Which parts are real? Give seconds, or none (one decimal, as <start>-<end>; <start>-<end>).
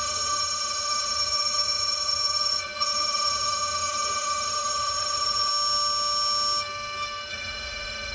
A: 5.5-7.3